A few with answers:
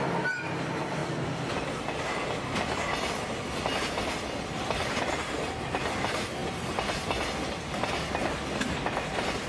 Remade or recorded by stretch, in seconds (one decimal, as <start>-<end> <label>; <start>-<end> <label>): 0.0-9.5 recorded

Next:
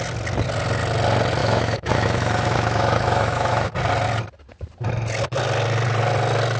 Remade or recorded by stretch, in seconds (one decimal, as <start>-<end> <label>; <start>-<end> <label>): 0.0-1.4 recorded; 1.4-3.7 remade; 3.7-6.6 recorded

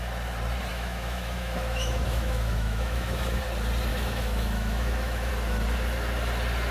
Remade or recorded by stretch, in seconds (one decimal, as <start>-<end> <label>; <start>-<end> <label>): 0.0-0.7 recorded; 0.7-3.4 remade; 3.4-3.9 recorded; 3.9-5.3 remade; 5.3-6.7 recorded